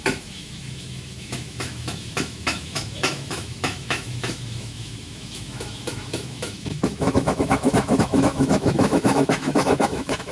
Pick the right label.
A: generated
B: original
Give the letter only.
A